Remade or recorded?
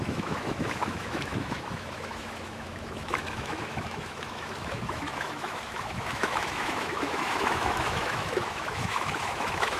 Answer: remade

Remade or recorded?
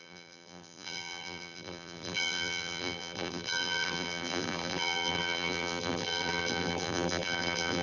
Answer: remade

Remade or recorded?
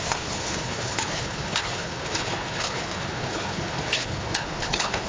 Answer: remade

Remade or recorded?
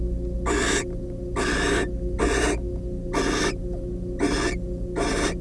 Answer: recorded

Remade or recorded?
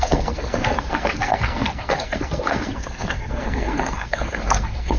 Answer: remade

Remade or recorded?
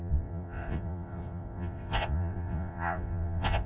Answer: remade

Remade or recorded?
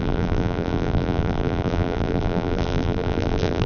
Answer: remade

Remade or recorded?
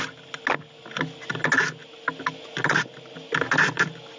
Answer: recorded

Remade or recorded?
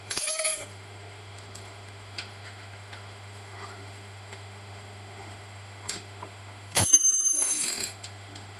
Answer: remade